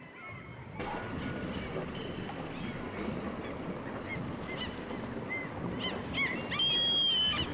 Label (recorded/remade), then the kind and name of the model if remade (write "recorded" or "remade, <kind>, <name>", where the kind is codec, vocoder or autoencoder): recorded